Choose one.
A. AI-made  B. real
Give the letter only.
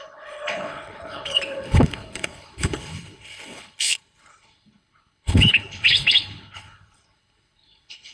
A